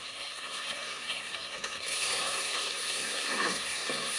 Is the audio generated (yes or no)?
yes